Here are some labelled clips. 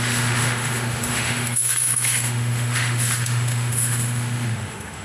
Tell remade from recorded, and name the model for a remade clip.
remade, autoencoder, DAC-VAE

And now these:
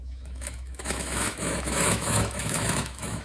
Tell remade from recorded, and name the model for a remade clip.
remade, autoencoder, DAC-VAE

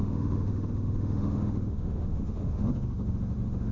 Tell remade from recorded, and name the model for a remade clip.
remade, autoencoder, DAC-VAE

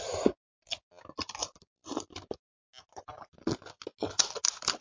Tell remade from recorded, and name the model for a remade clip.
recorded